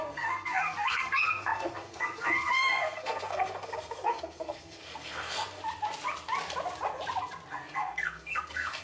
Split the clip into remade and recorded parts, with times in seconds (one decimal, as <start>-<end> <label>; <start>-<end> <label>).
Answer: 0.0-5.6 remade; 5.6-7.5 recorded; 7.5-8.8 remade